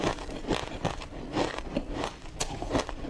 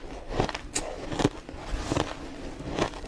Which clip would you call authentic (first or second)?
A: second